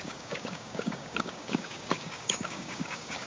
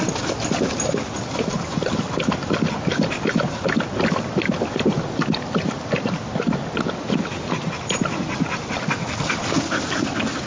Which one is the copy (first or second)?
first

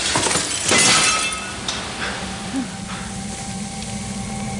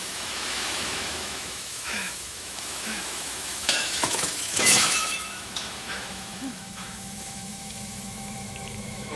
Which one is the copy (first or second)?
second